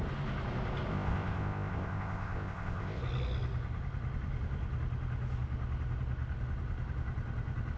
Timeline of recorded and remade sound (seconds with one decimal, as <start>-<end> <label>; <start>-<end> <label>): 0.0-0.9 recorded; 0.9-3.0 remade; 3.0-7.8 recorded